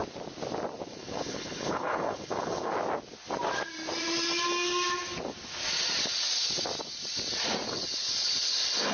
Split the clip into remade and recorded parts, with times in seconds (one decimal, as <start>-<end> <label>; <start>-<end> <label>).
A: 0.0-0.9 recorded; 0.9-2.7 remade; 2.7-7.7 recorded; 7.7-8.9 remade